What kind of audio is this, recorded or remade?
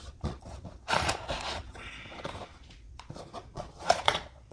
remade